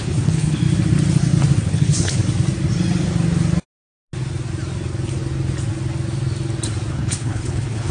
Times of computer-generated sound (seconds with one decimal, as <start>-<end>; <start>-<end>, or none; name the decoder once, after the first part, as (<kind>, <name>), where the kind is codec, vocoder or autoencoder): 0.0-0.6 (codec, HILCodec); 1.6-2.2; 6.9-7.9